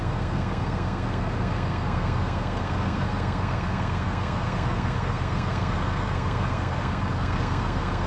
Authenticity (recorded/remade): remade